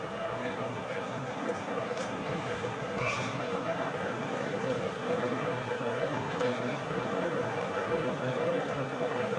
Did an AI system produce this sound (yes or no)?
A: yes